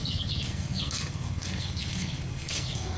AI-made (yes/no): yes